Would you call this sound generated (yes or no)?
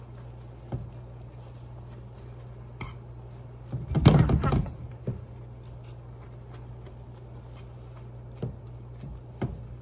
no